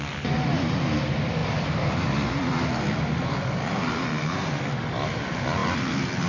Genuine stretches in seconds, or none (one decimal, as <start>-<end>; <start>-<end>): 0.0-6.3